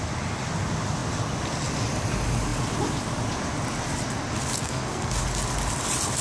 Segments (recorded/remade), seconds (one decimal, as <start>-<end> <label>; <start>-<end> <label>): 0.0-4.6 recorded; 4.6-5.2 remade; 5.2-6.2 recorded

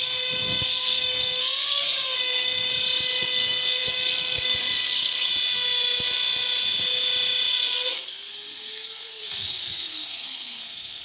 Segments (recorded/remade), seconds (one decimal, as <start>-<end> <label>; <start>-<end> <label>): 0.0-2.7 remade; 2.7-3.2 recorded; 3.2-5.3 remade; 5.3-7.5 recorded; 7.5-11.0 remade